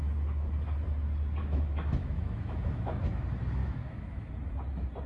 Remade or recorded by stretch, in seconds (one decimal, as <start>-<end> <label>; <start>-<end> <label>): 0.0-1.4 recorded; 1.4-3.2 remade; 3.2-3.6 recorded; 3.6-4.3 remade; 4.3-5.1 recorded